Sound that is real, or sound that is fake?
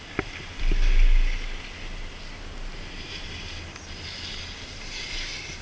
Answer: real